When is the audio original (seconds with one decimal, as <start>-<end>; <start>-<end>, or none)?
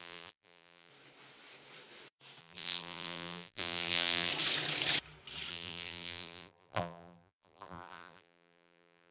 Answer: 0.9-2.4; 4.3-5.5